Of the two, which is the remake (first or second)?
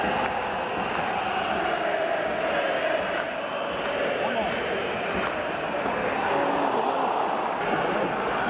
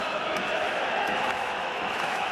second